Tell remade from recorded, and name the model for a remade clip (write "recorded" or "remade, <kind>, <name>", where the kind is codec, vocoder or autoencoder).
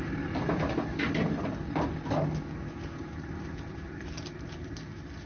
recorded